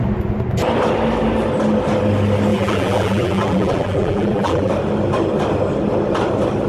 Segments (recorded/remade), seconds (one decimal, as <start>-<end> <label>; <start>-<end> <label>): 0.0-2.5 recorded; 2.5-4.7 remade; 4.7-6.7 recorded